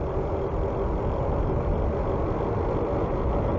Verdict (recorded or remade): recorded